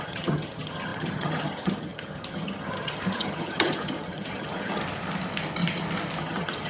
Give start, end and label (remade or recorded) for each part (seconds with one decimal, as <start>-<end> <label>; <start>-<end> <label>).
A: 0.0-4.8 remade; 4.8-6.2 recorded; 6.2-6.7 remade